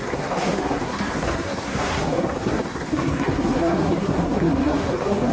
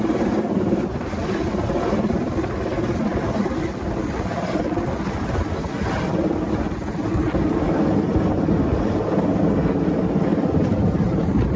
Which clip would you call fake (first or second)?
first